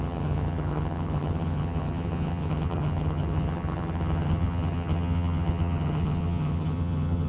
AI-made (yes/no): yes